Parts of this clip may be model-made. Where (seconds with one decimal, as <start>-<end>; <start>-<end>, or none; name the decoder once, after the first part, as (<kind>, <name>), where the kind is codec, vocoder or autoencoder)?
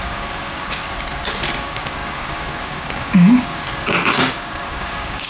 0.0-0.8 (codec, DAC); 1.6-5.3